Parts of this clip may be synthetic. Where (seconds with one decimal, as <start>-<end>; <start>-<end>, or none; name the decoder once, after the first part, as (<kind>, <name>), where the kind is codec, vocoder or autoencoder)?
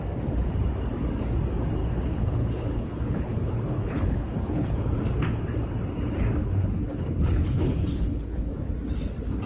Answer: 1.8-5.0 (codec, HILCodec); 6.4-8.5